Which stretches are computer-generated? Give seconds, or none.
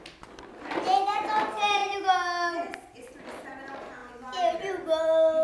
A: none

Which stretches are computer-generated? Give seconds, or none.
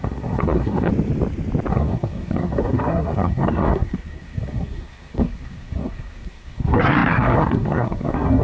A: 0.0-0.9; 1.7-8.4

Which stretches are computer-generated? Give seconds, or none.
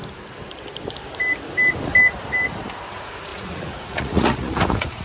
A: 2.9-5.0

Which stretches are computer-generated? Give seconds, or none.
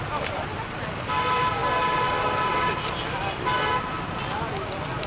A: none